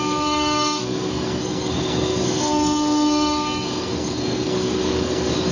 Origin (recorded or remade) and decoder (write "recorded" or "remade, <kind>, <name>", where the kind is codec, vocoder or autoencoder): remade, codec, SNAC